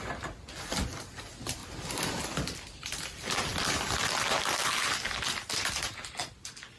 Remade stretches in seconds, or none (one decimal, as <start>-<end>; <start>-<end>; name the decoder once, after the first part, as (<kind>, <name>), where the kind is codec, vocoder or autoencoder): none